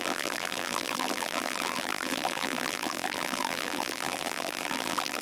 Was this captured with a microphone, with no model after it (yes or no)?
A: no